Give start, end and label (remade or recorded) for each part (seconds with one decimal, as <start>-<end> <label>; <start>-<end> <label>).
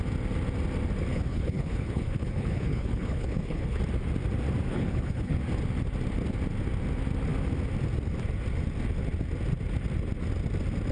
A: 0.0-1.1 recorded; 1.1-3.8 remade; 3.8-4.7 recorded; 4.7-5.4 remade; 5.4-10.9 recorded